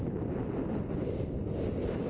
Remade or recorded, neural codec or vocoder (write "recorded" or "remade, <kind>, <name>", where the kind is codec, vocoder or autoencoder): recorded